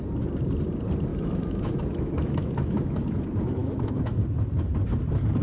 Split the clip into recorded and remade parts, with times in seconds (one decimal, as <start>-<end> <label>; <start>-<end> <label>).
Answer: 0.0-1.1 recorded; 1.1-3.0 remade; 3.0-3.6 recorded; 3.6-4.2 remade; 4.2-5.4 recorded